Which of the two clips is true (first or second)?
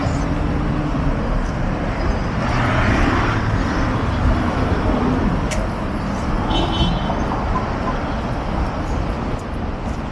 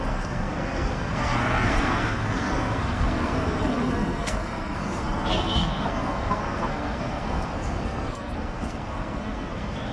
first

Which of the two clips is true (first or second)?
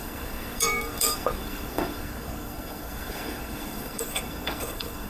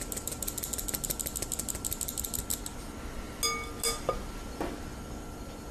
second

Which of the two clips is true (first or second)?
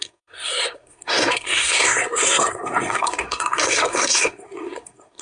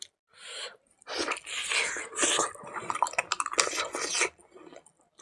second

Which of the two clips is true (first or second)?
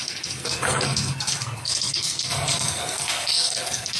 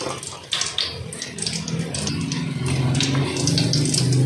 second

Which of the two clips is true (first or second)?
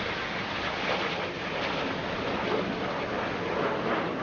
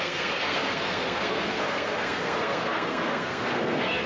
first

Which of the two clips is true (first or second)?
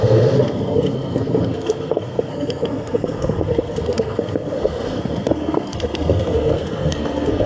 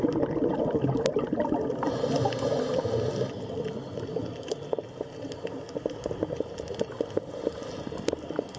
second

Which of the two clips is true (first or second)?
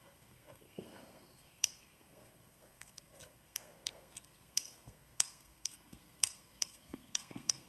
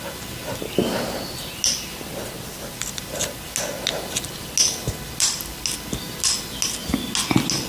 second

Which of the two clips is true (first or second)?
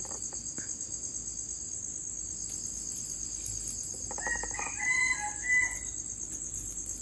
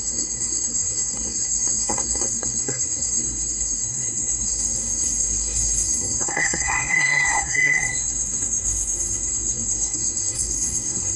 first